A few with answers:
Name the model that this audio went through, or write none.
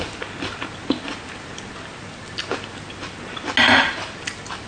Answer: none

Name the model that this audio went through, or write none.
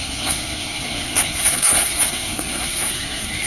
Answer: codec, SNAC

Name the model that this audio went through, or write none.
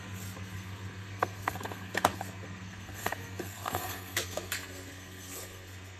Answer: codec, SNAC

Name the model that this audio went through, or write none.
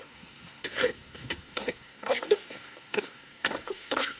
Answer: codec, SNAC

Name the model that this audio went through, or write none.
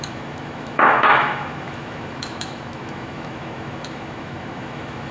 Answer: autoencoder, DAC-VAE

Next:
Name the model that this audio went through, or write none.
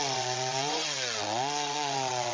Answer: vocoder, WaveNeXt